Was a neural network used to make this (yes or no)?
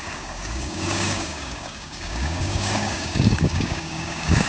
yes